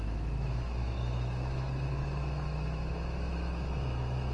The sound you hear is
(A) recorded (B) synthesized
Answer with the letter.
B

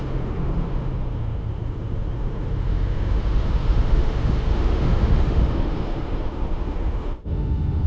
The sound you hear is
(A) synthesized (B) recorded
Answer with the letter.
A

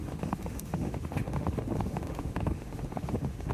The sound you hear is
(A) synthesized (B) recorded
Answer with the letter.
A